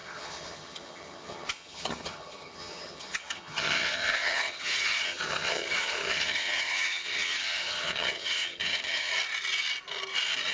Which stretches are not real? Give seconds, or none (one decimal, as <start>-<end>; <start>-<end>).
0.0-9.1

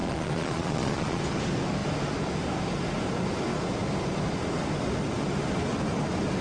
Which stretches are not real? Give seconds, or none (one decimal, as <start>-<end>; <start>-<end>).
0.0-1.2

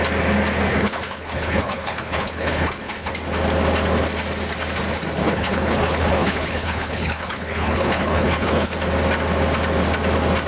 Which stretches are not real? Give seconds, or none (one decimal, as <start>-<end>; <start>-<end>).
0.7-3.1; 5.2-8.7

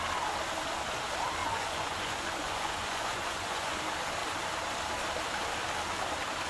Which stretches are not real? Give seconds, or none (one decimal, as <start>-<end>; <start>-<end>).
1.4-3.8

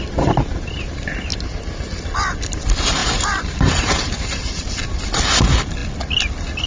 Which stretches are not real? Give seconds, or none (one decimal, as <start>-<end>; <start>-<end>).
3.0-4.7

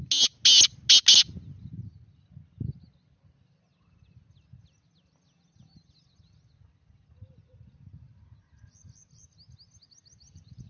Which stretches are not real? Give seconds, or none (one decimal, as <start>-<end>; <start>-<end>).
none